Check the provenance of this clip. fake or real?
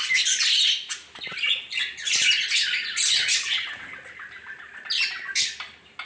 real